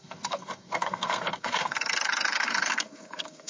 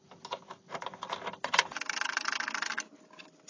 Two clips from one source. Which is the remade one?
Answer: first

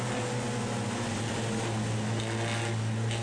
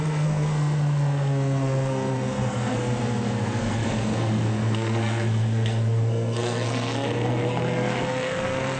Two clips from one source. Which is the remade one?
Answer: second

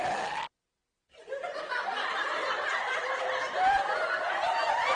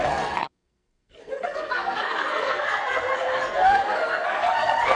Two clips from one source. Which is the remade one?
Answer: second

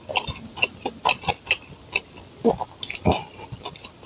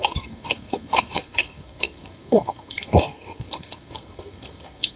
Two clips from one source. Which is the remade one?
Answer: second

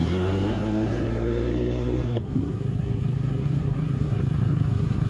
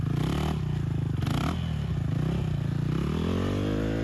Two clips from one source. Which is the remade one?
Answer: first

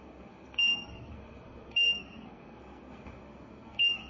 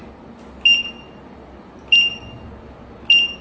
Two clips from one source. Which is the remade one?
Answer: first